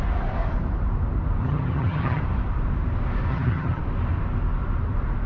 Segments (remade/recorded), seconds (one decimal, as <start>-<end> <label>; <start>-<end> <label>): 0.0-1.4 recorded; 1.4-2.2 remade; 2.2-3.3 recorded; 3.3-3.8 remade; 3.8-5.3 recorded